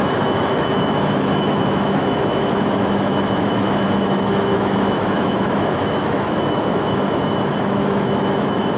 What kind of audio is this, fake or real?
fake